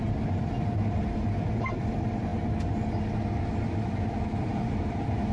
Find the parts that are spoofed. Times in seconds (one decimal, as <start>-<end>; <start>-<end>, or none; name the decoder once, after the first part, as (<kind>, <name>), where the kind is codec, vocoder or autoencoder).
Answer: 0.0-2.3 (vocoder, BigVGAN v2); 4.5-5.3